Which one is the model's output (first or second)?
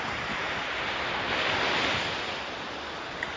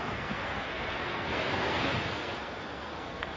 second